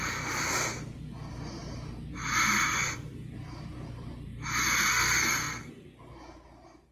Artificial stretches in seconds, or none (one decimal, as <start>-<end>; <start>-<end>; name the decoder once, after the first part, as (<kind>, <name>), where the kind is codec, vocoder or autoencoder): 4.9-5.7 (codec, SNAC)